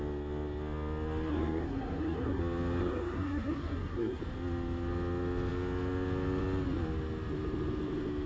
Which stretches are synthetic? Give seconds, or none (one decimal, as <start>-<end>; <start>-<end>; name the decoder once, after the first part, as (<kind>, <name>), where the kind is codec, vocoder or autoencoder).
1.3-2.4 (codec, SNAC); 2.8-4.2